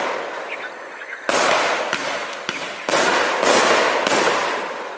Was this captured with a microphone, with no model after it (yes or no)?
yes